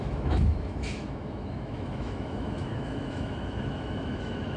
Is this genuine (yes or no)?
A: no